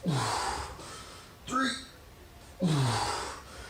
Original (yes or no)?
yes